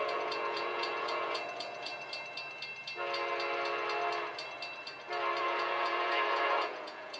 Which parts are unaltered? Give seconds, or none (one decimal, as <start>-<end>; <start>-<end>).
1.9-5.4